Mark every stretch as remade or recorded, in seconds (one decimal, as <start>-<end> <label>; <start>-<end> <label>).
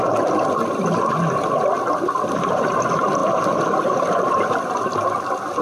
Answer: 0.0-5.6 recorded